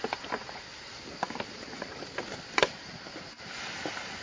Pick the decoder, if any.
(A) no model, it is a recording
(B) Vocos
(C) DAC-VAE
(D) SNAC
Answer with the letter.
A